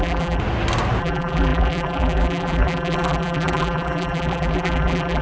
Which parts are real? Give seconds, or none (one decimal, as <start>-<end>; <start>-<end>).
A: 0.4-1.0